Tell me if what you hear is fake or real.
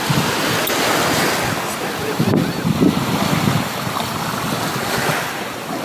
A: real